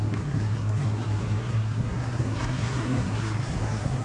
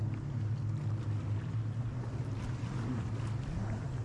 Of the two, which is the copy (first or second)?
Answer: first